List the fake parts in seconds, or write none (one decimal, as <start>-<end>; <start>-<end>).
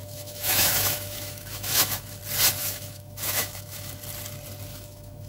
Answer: 0.0-2.2; 2.6-3.9; 4.7-5.3